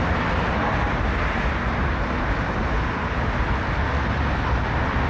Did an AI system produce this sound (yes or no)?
no